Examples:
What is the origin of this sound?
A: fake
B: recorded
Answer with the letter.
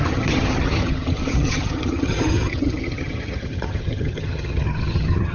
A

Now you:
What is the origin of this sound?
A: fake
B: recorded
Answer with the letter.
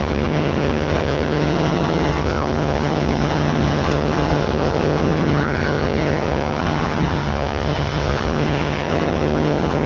A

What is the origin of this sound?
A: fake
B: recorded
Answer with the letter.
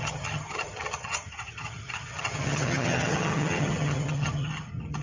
A